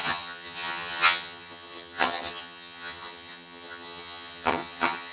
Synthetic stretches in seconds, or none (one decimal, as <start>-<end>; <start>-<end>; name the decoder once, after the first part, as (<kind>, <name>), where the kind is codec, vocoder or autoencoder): 0.0-5.1 (vocoder, HiFi-GAN)